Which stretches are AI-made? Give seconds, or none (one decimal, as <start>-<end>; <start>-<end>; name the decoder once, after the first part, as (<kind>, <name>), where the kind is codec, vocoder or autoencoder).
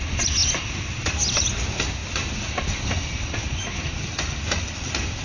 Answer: none